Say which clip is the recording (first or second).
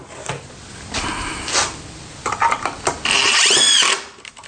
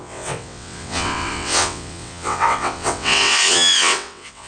first